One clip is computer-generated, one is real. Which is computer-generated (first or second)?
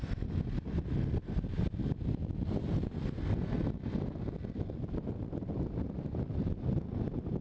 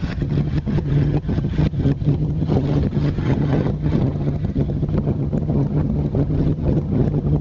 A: second